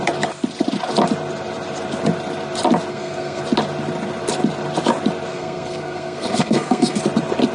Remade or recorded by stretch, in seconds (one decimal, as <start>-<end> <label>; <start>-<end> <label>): 0.0-2.9 recorded; 2.9-3.4 remade; 3.4-5.3 recorded; 5.3-7.0 remade; 7.0-7.5 recorded